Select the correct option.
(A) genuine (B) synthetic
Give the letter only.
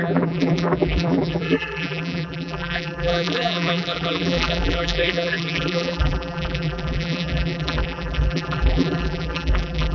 B